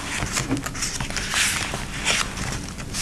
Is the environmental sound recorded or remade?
recorded